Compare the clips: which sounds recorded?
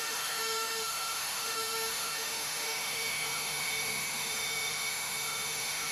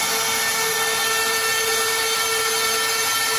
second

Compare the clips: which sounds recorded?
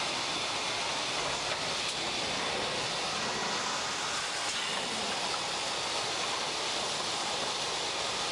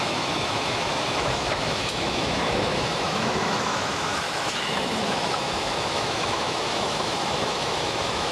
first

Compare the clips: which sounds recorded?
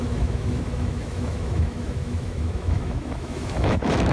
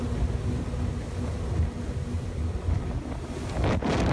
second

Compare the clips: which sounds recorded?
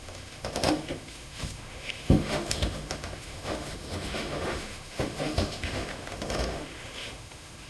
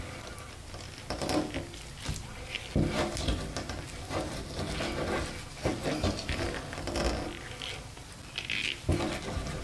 second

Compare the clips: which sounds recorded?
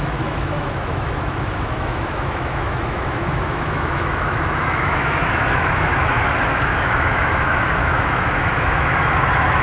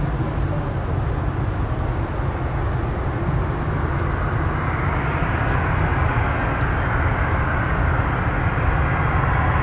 second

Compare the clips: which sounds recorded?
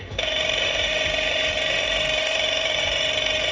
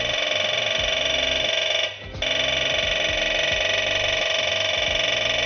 second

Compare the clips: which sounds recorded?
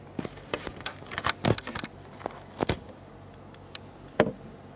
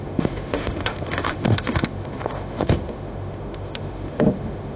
first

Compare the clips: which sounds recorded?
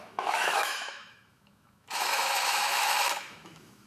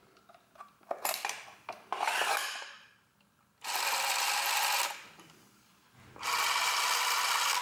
second